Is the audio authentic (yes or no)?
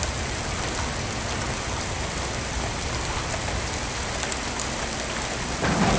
yes